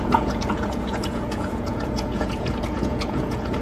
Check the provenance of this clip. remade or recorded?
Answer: remade